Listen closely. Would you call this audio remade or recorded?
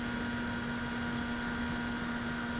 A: recorded